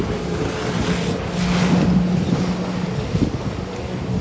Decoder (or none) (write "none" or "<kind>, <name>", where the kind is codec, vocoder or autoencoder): none